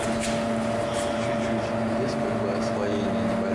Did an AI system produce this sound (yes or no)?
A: no